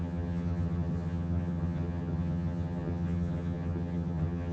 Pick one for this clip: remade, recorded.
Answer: remade